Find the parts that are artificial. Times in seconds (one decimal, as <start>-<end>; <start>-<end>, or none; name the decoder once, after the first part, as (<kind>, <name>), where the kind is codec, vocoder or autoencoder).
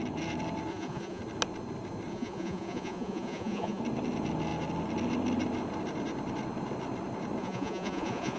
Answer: 0.7-1.2 (vocoder, Vocos); 2.1-3.8; 7.4-8.4